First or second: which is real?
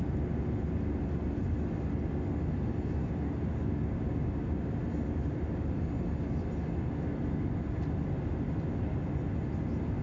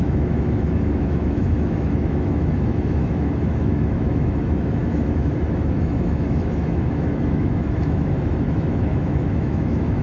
first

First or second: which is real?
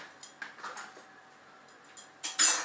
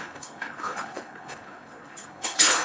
first